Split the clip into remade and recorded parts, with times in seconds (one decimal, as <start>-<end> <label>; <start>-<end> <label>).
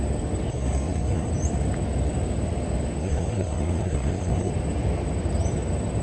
0.0-0.5 recorded; 0.5-1.3 remade; 1.3-3.0 recorded; 3.0-4.5 remade; 4.5-6.0 recorded